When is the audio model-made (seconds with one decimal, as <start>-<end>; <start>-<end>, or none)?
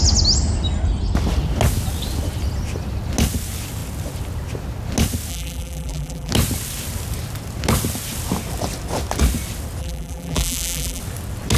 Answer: 5.3-6.3; 9.8-11.0